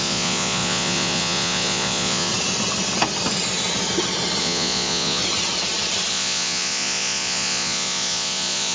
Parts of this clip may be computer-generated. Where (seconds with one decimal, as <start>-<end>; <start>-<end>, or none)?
0.0-2.3; 4.4-5.2; 6.1-8.7